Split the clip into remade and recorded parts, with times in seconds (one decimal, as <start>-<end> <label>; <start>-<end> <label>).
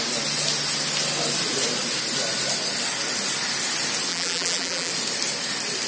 0.0-4.1 recorded; 4.1-4.9 remade; 4.9-5.9 recorded